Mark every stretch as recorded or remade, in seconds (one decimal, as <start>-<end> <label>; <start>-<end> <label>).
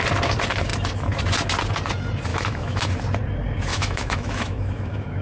0.0-2.3 recorded; 2.3-2.9 remade; 2.9-3.7 recorded; 3.7-5.2 remade